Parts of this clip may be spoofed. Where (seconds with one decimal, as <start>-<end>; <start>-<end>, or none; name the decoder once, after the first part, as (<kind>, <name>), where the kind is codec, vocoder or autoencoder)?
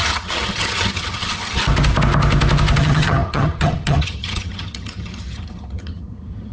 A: 0.0-1.6 (vocoder, HiFi-GAN); 2.8-6.5